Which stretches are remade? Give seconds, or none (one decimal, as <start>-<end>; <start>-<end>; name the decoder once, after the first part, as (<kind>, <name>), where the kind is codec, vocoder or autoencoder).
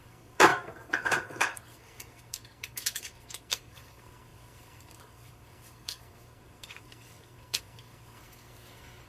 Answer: 0.0-9.1 (codec, SNAC)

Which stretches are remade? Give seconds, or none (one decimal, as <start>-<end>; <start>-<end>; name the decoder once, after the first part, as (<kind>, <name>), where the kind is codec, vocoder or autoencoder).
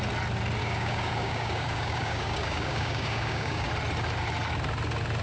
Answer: 0.6-3.7 (codec, DAC)